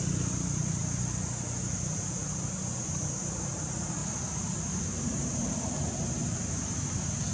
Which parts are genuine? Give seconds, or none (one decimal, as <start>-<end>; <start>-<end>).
0.8-2.8; 4.0-5.0

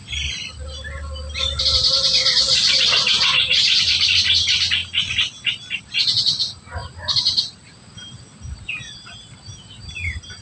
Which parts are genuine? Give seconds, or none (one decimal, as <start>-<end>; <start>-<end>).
2.1-2.7; 4.8-5.8

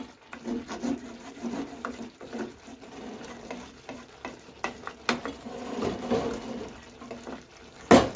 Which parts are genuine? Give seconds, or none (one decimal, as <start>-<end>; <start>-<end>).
0.0-5.2; 5.9-8.2

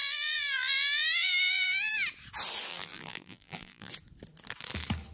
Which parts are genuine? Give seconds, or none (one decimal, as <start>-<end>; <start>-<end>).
1.9-2.7; 3.9-5.1